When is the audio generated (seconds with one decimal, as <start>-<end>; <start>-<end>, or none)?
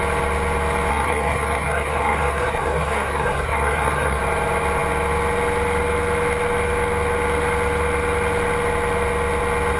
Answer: 0.9-4.2